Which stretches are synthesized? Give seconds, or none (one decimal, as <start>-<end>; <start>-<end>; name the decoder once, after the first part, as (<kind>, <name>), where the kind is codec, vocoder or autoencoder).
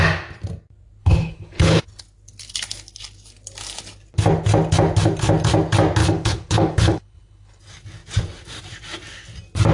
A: 1.0-2.0 (codec, HILCodec); 6.0-7.6